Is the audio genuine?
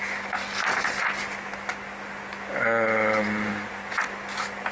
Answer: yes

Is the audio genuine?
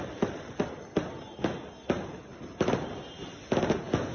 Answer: yes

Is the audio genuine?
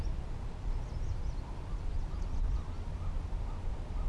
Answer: yes